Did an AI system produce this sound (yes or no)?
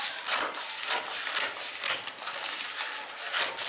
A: no